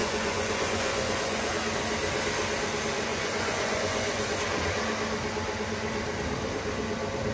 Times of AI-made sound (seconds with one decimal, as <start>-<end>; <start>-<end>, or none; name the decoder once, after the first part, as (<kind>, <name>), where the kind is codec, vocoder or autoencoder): 0.0-1.5 (vocoder, Vocos); 3.1-4.4